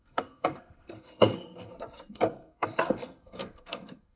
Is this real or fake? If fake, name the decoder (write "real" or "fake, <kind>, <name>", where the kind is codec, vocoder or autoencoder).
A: fake, codec, SNAC